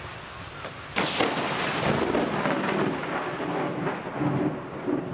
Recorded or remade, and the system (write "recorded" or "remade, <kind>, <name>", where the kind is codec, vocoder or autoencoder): recorded